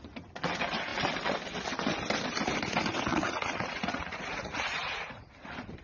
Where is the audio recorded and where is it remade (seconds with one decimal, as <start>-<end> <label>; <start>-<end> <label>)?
0.0-3.1 recorded; 3.1-5.3 remade; 5.3-5.8 recorded